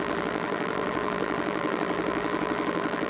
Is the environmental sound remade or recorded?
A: remade